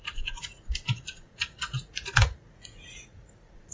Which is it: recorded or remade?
remade